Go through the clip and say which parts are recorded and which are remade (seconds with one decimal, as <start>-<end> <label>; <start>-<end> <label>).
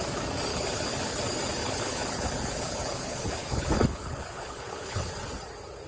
0.0-0.5 recorded; 0.5-1.2 remade; 1.2-1.6 recorded; 1.6-5.1 remade; 5.1-5.9 recorded